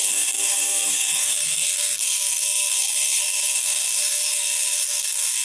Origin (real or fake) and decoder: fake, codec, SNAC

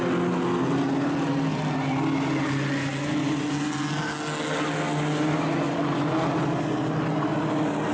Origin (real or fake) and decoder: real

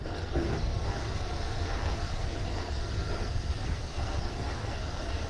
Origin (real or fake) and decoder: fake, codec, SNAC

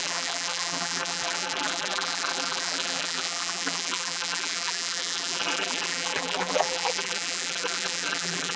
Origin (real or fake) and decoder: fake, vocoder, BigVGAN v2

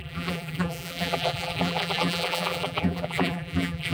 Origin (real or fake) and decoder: fake, vocoder, BigVGAN v2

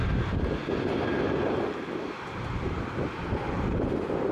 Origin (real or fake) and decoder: real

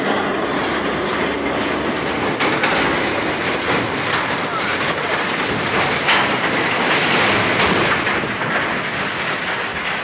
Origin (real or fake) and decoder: real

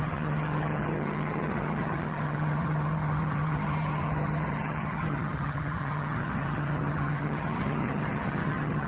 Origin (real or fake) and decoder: fake, vocoder, HiFi-GAN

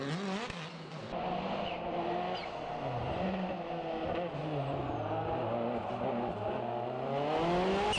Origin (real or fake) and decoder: real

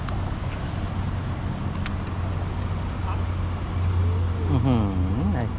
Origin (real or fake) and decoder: real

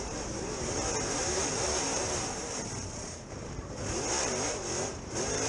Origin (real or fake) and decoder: fake, vocoder, BigVGAN v2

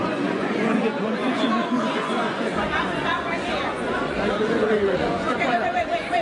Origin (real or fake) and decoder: fake, vocoder, Vocos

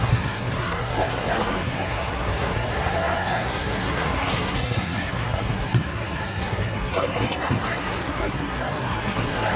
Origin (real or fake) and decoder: fake, codec, SNAC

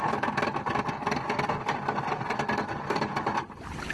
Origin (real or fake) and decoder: real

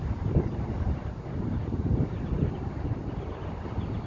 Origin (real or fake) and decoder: real